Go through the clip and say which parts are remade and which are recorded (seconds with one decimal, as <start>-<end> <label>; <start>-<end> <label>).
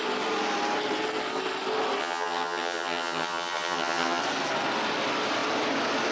0.0-2.0 recorded; 2.0-4.2 remade; 4.2-6.1 recorded